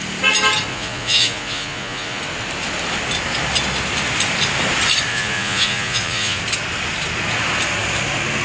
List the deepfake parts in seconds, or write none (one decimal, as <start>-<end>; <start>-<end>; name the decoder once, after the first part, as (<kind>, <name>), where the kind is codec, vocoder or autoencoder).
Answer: 0.7-2.2 (vocoder, Vocos); 5.1-6.4